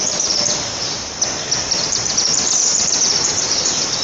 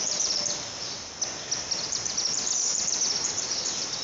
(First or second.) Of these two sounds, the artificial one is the first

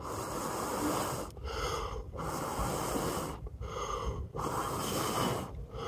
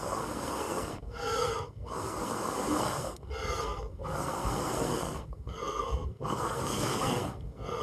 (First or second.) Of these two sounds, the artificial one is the second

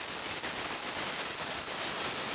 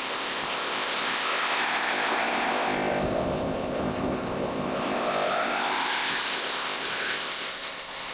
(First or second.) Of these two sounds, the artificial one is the second